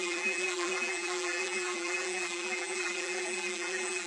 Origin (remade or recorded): remade